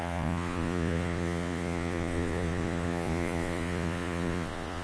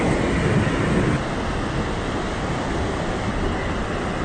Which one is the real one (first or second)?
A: second